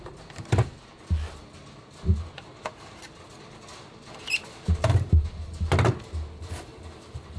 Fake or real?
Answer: real